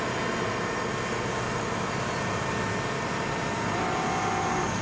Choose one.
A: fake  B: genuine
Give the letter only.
B